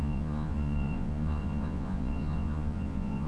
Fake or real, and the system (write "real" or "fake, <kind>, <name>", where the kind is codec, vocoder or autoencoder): fake, vocoder, Vocos